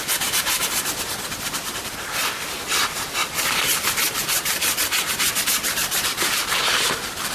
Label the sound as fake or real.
fake